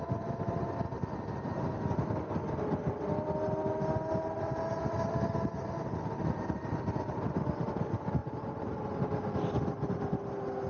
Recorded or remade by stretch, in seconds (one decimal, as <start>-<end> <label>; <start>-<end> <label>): 0.0-10.7 recorded